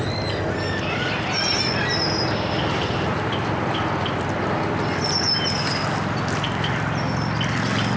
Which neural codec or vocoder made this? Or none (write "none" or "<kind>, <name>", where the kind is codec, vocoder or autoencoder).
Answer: none